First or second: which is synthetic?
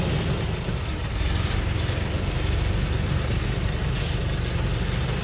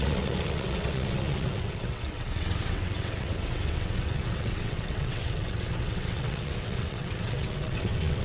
second